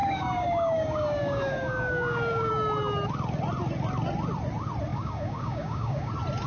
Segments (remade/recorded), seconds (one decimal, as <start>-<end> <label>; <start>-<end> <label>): 0.0-2.5 remade; 2.5-4.9 recorded; 4.9-6.1 remade; 6.1-6.5 recorded